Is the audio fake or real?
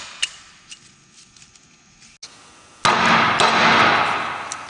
real